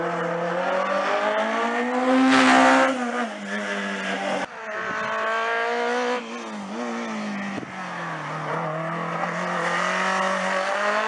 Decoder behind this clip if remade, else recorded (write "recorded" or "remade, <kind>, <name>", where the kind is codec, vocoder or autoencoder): recorded